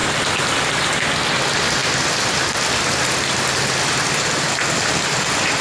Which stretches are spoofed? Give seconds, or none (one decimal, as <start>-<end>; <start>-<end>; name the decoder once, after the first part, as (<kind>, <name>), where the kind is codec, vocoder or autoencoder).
none